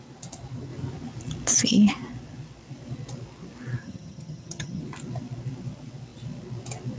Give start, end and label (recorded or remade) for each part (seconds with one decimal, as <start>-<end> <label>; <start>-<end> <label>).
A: 0.0-3.8 recorded; 3.8-4.8 remade; 4.8-7.0 recorded